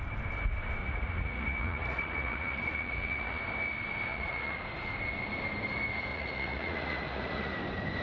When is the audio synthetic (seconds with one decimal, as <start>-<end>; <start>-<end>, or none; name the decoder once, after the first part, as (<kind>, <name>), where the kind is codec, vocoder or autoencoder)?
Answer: 0.8-3.4 (vocoder, Vocos); 4.1-4.6; 6.1-7.5